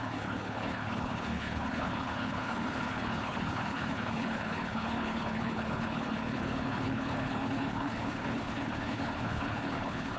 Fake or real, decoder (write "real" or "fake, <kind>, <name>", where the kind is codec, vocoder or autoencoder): fake, codec, HILCodec